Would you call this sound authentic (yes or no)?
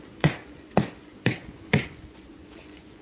no